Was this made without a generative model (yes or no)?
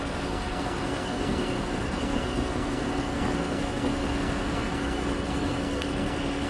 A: no